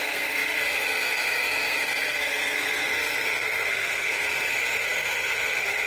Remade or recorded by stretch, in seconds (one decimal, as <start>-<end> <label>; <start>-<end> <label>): 0.0-5.9 remade